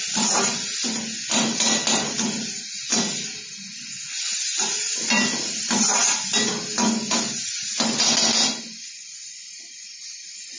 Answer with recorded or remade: recorded